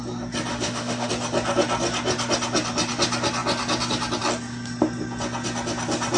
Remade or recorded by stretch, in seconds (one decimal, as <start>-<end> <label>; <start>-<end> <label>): 0.0-0.5 recorded; 0.5-1.1 remade; 1.1-6.2 recorded